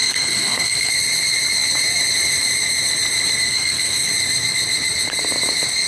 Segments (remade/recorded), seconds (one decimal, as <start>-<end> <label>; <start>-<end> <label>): 0.0-0.9 remade; 0.9-3.5 recorded; 3.5-4.1 remade; 4.1-5.9 recorded